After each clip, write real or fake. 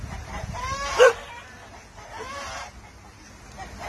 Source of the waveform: real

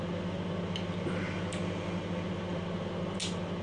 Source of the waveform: real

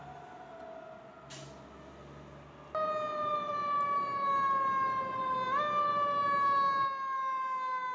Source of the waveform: real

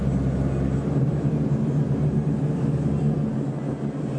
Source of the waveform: real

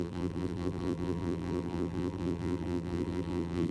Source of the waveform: fake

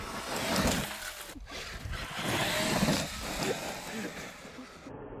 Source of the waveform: real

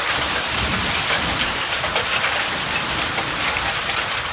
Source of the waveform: real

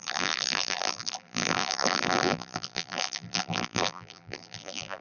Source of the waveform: fake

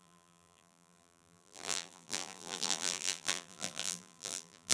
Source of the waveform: fake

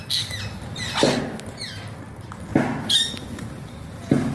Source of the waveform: real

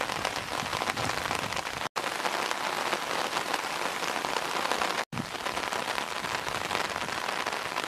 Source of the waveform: real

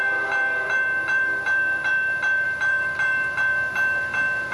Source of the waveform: fake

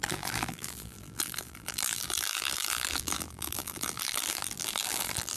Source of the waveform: fake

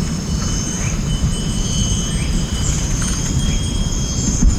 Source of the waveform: fake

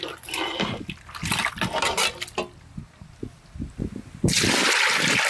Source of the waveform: real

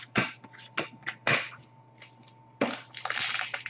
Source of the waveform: real